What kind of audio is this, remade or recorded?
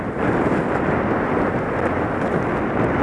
recorded